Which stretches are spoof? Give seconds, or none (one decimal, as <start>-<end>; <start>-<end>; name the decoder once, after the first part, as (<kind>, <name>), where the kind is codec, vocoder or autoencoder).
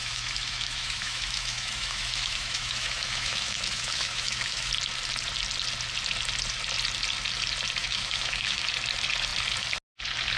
0.0-4.7 (autoencoder, DAC-VAE); 7.8-8.6